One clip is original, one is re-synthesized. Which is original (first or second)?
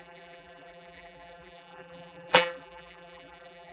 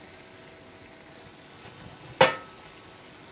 second